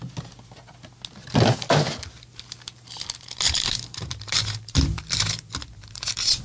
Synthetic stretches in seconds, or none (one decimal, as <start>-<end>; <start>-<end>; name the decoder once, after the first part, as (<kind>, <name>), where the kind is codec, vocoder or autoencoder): 2.3-6.4 (vocoder, BigVGAN v2)